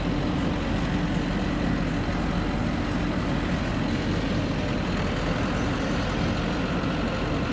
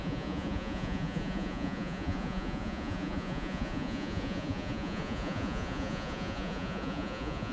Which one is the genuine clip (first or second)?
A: first